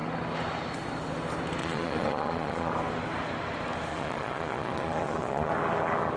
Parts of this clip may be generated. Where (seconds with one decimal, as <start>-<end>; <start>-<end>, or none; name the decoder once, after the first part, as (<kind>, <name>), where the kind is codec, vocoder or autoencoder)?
1.6-2.7 (vocoder, Vocos); 3.9-5.5